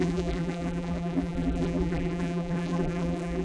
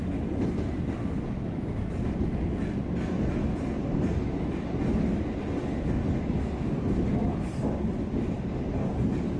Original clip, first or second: second